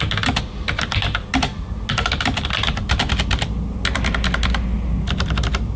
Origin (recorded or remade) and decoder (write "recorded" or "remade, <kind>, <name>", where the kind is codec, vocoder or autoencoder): recorded